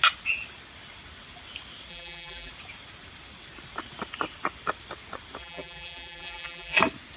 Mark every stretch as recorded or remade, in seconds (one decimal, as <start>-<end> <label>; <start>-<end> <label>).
0.0-1.9 recorded; 1.9-2.5 remade; 2.5-5.4 recorded; 5.4-6.8 remade; 6.8-7.2 recorded